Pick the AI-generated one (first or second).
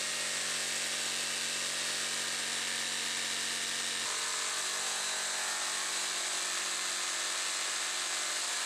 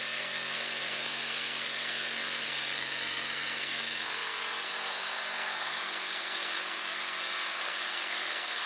second